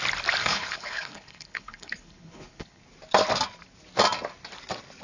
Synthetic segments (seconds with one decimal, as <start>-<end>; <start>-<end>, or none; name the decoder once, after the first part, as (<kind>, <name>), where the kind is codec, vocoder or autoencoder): 0.4-2.8 (codec, HILCodec)